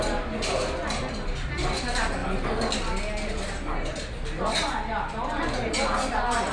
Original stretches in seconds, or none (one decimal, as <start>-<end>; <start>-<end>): 0.0-6.5